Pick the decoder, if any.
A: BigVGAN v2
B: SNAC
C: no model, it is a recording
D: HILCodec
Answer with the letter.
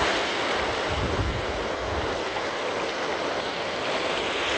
C